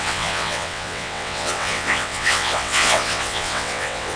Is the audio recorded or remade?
remade